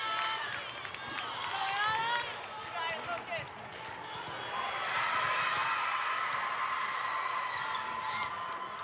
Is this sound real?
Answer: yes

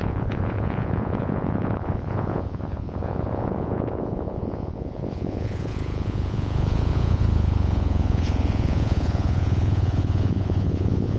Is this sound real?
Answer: no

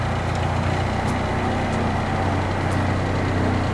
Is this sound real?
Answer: yes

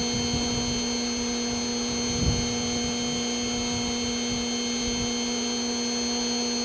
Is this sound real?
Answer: yes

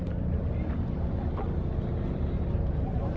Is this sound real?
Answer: yes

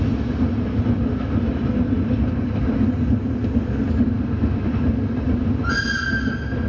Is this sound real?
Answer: yes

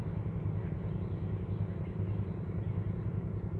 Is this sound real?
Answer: yes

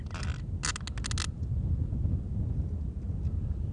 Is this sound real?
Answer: yes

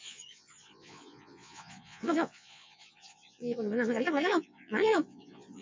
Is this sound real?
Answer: no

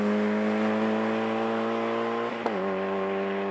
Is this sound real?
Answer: yes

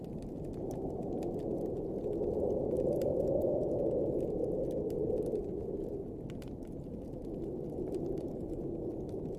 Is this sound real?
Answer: yes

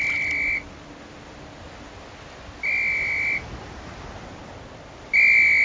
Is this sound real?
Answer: yes